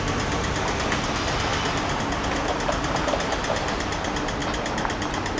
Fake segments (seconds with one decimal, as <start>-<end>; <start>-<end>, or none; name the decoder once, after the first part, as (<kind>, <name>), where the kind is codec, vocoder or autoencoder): 1.5-2.0 (vocoder, BigVGAN v2)

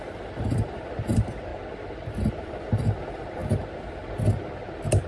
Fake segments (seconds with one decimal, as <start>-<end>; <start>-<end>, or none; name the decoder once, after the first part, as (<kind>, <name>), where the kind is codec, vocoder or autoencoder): 0.0-1.5 (vocoder, BigVGAN v2); 2.3-3.4